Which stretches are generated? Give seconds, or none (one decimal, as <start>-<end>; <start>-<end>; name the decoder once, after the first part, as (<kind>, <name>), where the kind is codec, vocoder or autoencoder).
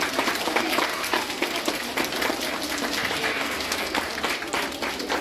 0.9-1.5 (codec, SNAC); 3.3-4.0